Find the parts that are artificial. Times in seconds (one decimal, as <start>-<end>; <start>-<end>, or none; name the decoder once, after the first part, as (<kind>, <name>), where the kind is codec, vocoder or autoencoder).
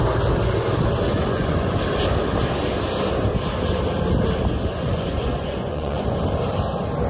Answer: 1.2-1.8 (vocoder, Vocos); 4.7-6.2